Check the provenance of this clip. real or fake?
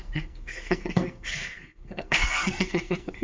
fake